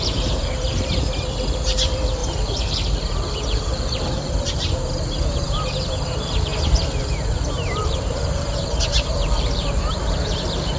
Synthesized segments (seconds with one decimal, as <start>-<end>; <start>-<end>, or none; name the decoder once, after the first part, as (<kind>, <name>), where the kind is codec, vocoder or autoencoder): 0.0-10.8 (vocoder, BigVGAN v2)